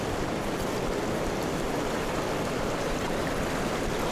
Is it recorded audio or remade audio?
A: remade